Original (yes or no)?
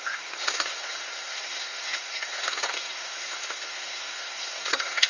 no